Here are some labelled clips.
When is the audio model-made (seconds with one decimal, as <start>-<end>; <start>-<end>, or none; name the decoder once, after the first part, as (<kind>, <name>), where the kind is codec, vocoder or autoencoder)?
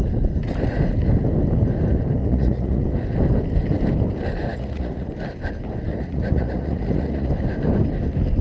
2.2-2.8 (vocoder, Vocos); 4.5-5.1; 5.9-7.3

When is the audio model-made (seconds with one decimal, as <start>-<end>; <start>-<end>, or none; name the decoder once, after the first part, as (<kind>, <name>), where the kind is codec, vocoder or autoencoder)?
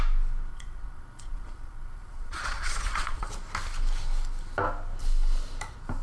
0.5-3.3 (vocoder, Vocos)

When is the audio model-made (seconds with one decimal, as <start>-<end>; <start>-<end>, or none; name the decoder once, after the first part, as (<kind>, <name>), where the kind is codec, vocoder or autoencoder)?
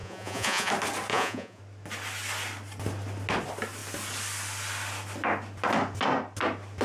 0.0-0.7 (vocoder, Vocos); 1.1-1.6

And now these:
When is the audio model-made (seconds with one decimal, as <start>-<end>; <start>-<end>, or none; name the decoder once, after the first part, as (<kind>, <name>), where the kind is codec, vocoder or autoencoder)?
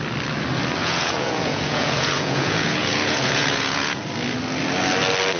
0.8-4.0 (vocoder, Vocos)